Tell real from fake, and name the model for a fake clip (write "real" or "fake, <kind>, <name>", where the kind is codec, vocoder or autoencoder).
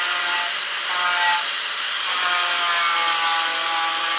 real